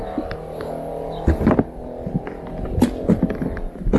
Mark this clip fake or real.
real